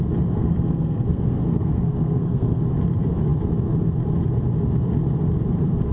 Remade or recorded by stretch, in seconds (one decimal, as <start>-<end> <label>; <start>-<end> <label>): 0.0-0.4 recorded; 0.4-2.6 remade; 2.6-5.9 recorded